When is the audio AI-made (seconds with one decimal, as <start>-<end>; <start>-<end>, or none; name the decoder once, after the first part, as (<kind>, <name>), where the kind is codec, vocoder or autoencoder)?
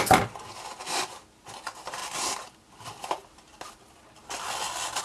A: none